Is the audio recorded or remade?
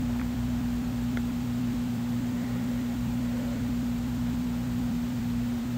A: remade